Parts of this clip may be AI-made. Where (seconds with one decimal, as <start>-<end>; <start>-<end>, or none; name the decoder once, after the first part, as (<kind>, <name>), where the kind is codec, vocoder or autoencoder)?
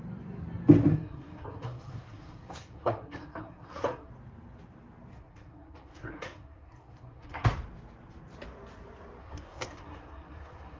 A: 0.9-4.1 (codec, SNAC); 5.1-7.5; 9.2-10.8